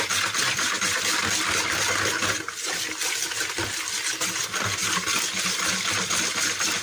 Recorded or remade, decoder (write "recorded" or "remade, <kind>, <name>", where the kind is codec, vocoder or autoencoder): recorded